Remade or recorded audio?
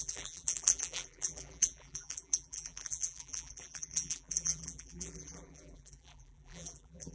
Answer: remade